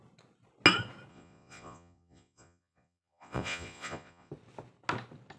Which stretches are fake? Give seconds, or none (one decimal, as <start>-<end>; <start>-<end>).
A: 1.1-4.3